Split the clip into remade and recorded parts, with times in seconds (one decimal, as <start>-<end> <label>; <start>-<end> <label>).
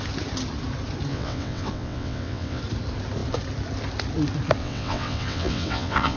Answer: 0.0-1.1 recorded; 1.1-2.6 remade; 2.6-4.6 recorded; 4.6-6.2 remade